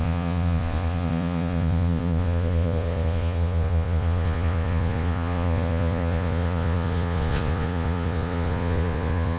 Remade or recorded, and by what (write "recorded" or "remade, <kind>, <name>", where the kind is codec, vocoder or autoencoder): remade, vocoder, Vocos